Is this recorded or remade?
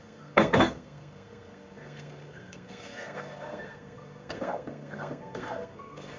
remade